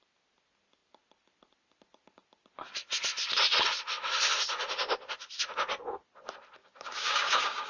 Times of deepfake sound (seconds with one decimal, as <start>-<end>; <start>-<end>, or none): 6.6-7.7